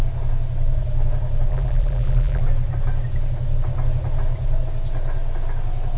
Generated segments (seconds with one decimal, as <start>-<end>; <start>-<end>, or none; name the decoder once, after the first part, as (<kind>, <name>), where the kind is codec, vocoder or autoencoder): 1.5-2.4 (vocoder, BigVGAN v2)